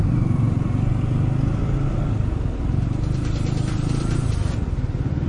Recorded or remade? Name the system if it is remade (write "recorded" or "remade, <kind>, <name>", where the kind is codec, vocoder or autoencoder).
recorded